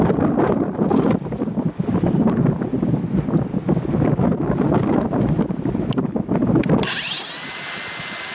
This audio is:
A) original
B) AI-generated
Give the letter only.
A